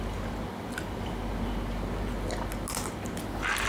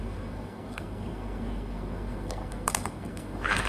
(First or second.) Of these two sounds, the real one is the first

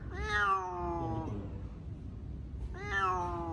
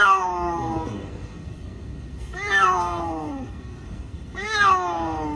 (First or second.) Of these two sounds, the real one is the first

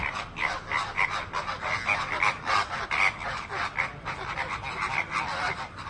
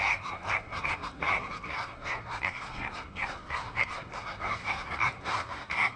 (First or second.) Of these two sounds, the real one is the first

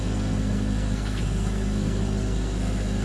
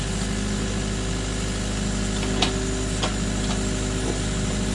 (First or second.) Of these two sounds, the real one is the second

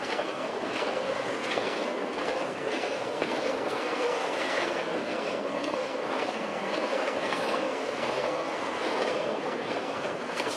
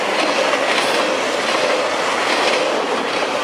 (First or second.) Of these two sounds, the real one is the second